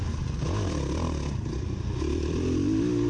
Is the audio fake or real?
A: real